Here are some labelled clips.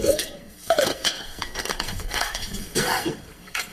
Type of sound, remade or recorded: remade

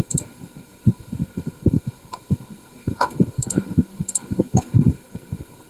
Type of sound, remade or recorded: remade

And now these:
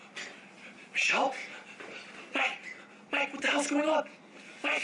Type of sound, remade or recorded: recorded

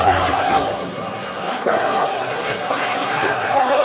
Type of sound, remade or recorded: remade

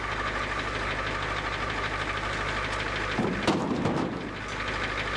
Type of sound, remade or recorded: recorded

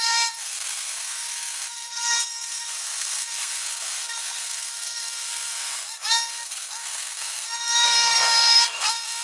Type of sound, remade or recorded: remade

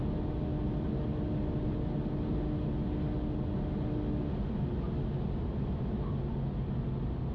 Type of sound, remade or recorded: recorded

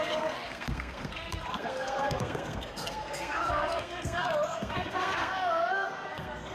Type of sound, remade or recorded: remade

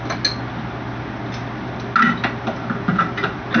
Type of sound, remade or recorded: recorded